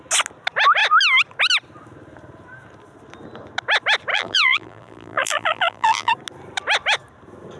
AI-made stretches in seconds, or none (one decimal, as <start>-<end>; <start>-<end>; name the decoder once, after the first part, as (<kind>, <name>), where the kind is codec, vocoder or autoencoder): 4.1-6.1 (vocoder, BigVGAN v2)